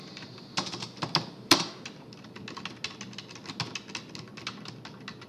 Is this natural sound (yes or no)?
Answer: yes